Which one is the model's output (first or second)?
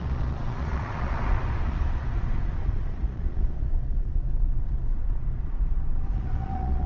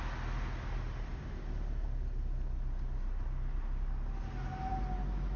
first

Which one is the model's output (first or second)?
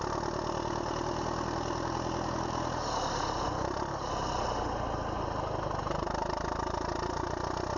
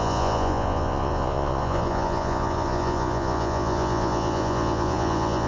second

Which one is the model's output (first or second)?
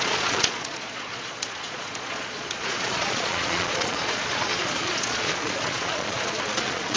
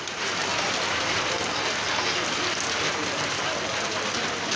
first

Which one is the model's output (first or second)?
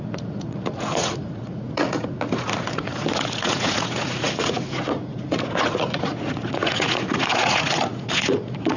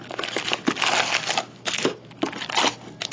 first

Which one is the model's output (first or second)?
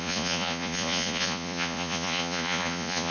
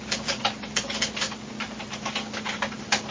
first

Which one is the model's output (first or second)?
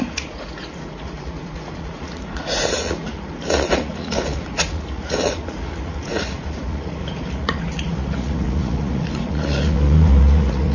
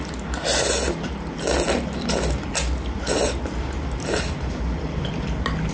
first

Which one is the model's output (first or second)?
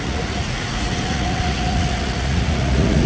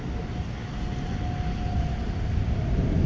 first